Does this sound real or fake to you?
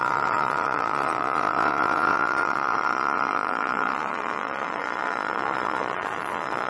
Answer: fake